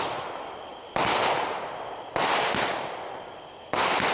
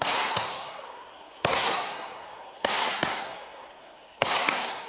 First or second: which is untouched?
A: first